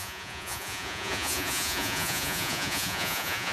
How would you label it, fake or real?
fake